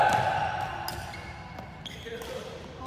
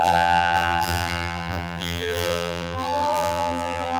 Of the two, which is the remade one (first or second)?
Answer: second